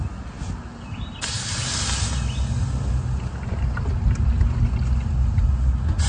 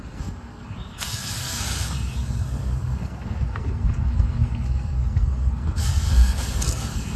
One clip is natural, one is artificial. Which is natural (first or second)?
first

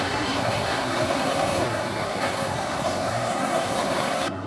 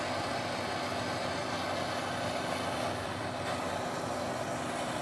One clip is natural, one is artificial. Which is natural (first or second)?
second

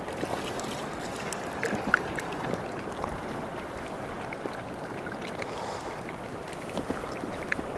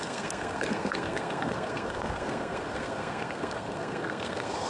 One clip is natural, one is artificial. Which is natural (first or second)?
first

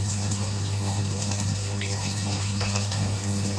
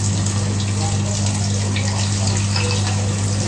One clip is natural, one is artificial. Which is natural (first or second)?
second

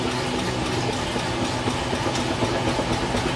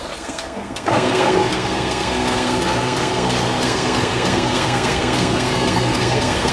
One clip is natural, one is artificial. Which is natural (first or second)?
first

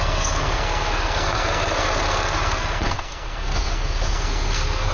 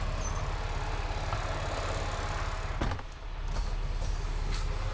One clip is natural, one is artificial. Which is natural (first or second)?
second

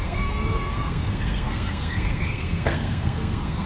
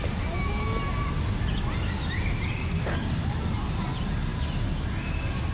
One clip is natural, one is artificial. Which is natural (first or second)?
second